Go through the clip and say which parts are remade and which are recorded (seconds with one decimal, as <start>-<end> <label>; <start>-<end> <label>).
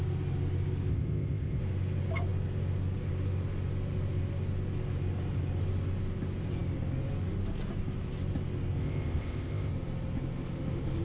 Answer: 0.0-0.9 recorded; 0.9-1.6 remade; 1.6-8.8 recorded; 8.8-9.7 remade; 9.7-11.0 recorded